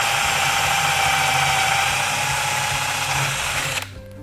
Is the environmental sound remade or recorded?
recorded